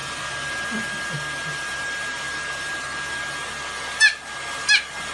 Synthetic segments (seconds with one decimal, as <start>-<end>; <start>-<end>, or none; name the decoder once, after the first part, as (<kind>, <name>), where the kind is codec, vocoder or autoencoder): none